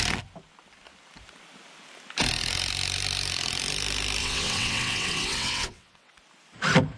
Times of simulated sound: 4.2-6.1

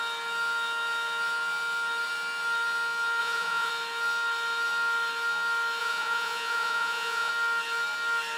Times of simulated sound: 3.2-3.7; 5.8-7.3